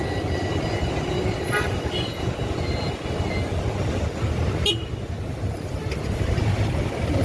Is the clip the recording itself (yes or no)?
yes